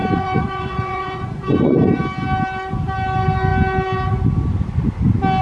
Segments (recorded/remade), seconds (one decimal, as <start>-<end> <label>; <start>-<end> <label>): 0.0-2.0 remade; 2.0-5.4 recorded